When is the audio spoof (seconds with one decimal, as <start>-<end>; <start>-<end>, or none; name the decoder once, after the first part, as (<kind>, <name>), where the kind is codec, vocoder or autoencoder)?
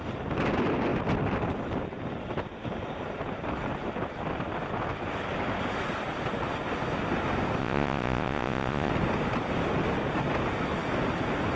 7.6-8.9 (vocoder, Vocos)